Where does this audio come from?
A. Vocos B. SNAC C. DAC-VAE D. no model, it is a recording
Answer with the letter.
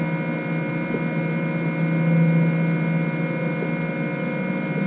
D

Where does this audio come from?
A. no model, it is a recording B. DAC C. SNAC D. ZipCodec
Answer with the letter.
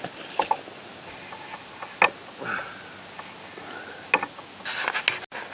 A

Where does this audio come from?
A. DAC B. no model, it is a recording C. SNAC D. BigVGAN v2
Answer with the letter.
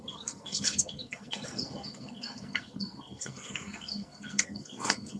C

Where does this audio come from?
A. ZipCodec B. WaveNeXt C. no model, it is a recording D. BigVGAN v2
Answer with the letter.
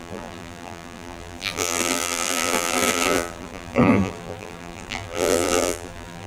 D